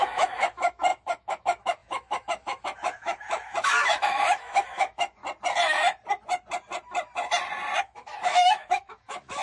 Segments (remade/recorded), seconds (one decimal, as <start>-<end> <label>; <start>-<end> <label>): 0.0-5.2 remade; 5.2-7.8 recorded; 7.8-9.4 remade